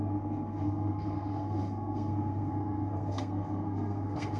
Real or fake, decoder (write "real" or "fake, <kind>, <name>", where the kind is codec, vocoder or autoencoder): fake, codec, SNAC